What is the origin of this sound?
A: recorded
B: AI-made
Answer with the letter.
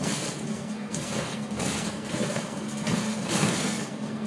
B